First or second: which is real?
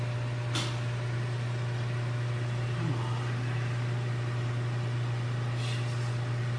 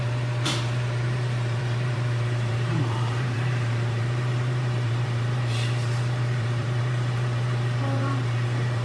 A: first